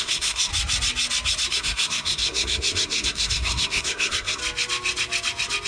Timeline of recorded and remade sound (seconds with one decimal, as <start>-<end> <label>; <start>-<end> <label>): 0.0-0.5 remade; 0.5-1.5 recorded; 1.5-4.4 remade; 4.4-5.7 recorded